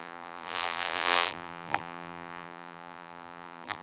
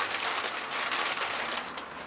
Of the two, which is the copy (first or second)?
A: first